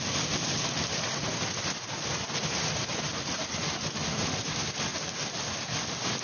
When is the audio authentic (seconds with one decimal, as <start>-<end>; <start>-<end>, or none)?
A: 0.0-6.2